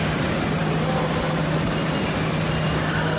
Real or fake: real